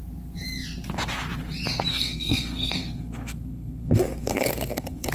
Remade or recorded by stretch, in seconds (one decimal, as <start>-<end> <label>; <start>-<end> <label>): 0.0-1.9 recorded; 1.9-5.1 remade